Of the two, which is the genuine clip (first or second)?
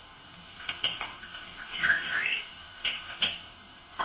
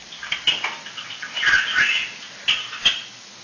second